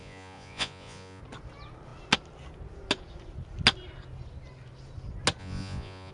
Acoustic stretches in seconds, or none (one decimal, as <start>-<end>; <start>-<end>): 1.2-5.4